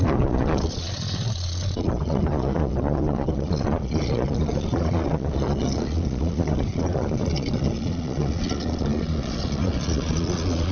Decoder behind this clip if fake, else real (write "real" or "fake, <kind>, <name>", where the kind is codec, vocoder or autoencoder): fake, vocoder, Vocos